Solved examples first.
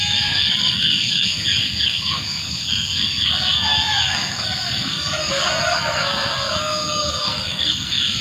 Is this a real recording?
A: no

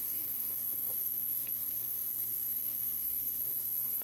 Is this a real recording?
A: no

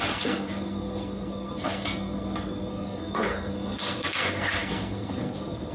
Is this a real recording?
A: no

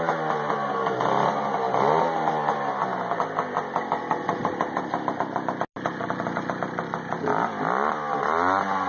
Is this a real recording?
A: yes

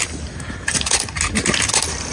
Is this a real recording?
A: yes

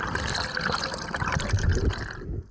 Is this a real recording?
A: yes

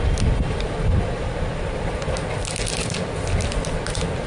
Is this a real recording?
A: yes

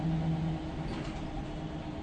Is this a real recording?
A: yes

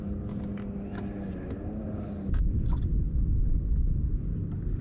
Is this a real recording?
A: yes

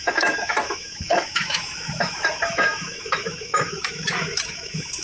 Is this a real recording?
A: no